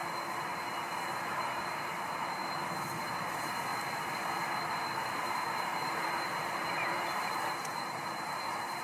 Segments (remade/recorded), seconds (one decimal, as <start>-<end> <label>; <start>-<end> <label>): 0.0-1.1 recorded; 1.1-3.7 remade; 3.7-5.2 recorded; 5.2-8.8 remade